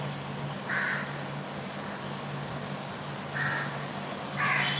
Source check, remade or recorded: recorded